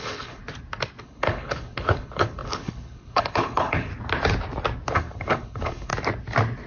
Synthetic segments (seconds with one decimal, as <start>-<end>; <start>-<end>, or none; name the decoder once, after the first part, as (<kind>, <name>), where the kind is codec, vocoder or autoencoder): 0.0-0.4 (codec, HILCodec); 1.0-3.9; 4.9-5.9